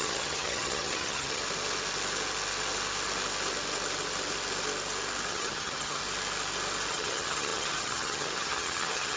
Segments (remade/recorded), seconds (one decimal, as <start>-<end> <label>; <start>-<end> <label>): 0.0-1.4 remade; 1.4-5.3 recorded; 5.3-6.0 remade; 6.0-6.9 recorded; 6.9-9.2 remade

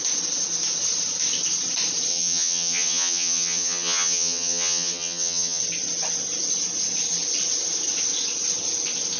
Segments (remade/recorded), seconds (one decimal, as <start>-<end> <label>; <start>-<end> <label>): 0.0-2.1 recorded; 2.1-5.6 remade; 5.6-9.2 recorded

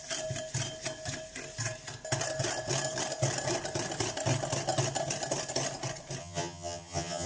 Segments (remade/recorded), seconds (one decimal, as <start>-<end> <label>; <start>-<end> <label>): 0.0-6.2 recorded; 6.2-7.3 remade

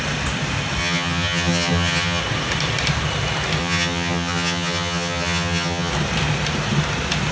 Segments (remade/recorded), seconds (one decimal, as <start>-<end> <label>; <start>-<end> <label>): 0.0-0.8 recorded; 0.8-2.2 remade; 2.2-3.6 recorded; 3.6-5.9 remade; 5.9-7.3 recorded

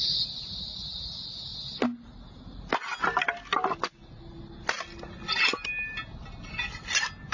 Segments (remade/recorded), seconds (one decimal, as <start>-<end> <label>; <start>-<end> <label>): 0.0-7.3 recorded

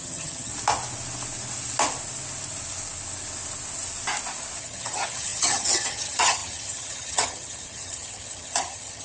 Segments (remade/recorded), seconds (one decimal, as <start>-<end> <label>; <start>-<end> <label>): 0.0-0.5 remade; 0.5-4.6 recorded; 4.6-9.0 remade